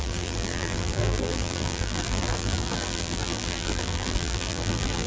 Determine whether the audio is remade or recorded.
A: remade